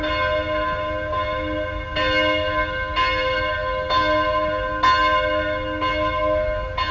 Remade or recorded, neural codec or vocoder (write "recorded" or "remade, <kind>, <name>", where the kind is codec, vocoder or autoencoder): recorded